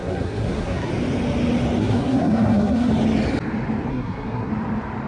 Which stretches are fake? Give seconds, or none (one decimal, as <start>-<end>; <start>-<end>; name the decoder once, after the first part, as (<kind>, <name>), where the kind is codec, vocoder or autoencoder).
0.0-0.9 (codec, SNAC); 1.8-2.9; 3.9-4.5